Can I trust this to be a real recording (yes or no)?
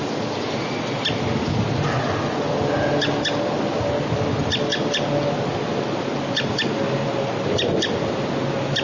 yes